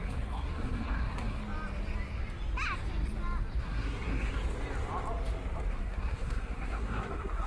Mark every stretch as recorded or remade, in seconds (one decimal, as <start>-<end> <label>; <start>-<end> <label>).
0.0-1.4 remade; 1.4-3.6 recorded; 3.6-4.3 remade; 4.3-5.7 recorded; 5.7-7.5 remade